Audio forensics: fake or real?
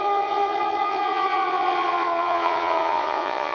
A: fake